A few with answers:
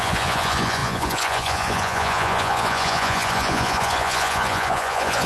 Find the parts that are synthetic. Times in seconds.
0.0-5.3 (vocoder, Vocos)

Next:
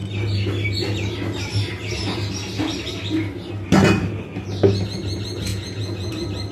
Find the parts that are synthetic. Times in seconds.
5.5-6.1 (vocoder, Vocos)